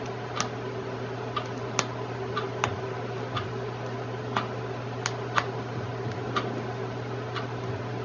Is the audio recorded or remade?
recorded